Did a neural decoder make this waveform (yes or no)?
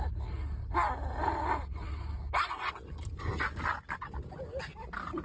no